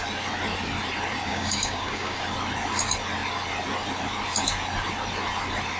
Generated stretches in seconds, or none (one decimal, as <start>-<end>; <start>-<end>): 1.3-2.2